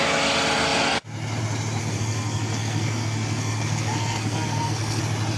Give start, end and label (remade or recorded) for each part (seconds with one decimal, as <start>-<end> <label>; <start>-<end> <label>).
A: 0.0-1.8 recorded; 1.8-5.0 remade; 5.0-5.4 recorded